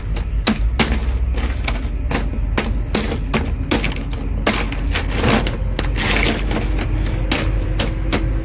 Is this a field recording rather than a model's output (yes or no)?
yes